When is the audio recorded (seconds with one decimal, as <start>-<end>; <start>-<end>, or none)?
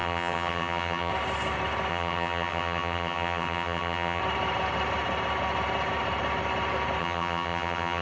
1.1-1.9; 4.2-7.0